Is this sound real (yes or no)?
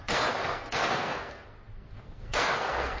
no